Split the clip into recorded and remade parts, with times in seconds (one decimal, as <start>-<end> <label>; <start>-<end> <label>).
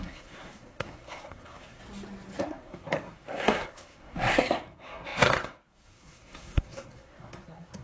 0.0-1.8 remade; 1.8-2.4 recorded; 2.4-7.8 remade